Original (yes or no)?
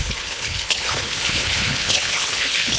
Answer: no